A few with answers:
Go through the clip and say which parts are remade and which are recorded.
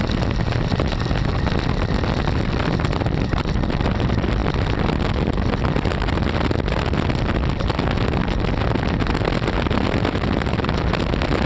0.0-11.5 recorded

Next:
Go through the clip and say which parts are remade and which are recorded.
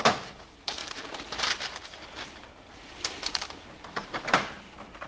0.0-5.1 remade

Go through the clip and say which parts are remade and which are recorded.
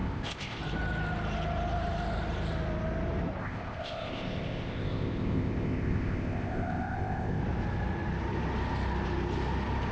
0.0-0.6 remade; 0.6-3.4 recorded; 3.4-7.4 remade; 7.4-9.9 recorded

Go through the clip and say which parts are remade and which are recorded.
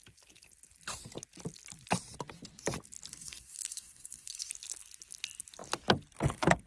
0.0-3.1 recorded; 3.1-4.5 remade; 4.5-6.7 recorded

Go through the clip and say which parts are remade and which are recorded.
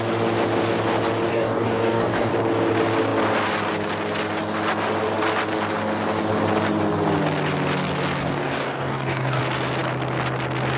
0.0-1.3 recorded; 1.3-2.3 remade; 2.3-8.2 recorded; 8.2-9.4 remade; 9.4-10.8 recorded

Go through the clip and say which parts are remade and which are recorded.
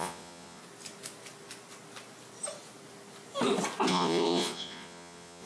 0.0-0.6 remade; 0.6-3.9 recorded; 3.9-5.5 remade